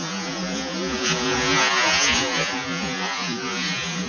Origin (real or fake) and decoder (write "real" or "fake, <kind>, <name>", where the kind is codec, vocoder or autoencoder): fake, vocoder, Vocos